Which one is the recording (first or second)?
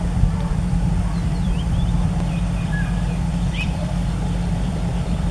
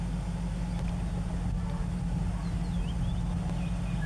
second